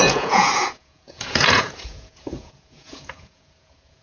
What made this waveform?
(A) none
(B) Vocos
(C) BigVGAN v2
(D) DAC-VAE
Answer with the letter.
B